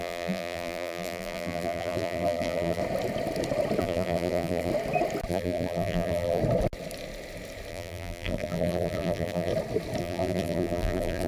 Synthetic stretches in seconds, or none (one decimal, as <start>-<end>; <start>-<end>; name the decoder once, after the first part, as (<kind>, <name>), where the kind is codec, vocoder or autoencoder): 0.0-2.8 (vocoder, BigVGAN v2); 3.8-4.7; 5.3-6.4; 7.7-9.5; 10.0-11.3